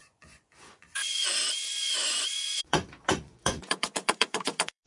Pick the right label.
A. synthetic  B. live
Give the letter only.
A